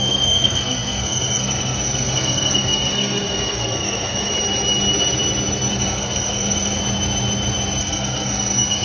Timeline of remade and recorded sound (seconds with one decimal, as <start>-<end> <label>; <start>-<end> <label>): 0.0-4.3 remade; 4.3-5.7 recorded; 5.7-6.8 remade; 6.8-7.8 recorded; 7.8-8.8 remade